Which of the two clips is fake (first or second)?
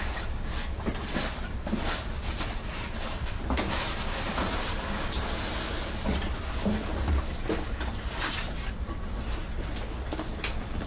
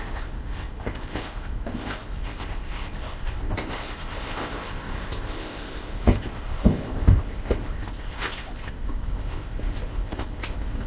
second